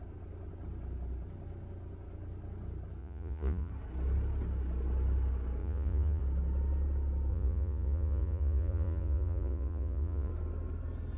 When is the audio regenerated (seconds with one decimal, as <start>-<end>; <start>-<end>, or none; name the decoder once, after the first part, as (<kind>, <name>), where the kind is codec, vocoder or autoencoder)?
3.0-3.7 (vocoder, Vocos); 5.6-6.2; 7.3-10.3